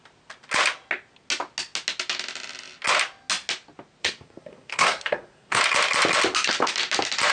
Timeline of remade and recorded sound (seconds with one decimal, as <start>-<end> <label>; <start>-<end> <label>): 0.0-4.0 recorded; 4.0-5.6 remade; 5.6-7.3 recorded